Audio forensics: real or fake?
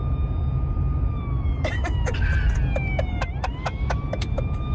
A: real